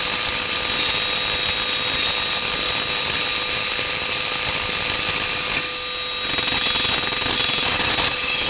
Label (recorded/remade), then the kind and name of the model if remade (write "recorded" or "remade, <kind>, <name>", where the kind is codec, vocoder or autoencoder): recorded